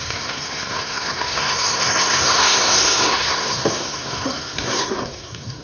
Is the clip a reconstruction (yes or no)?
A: yes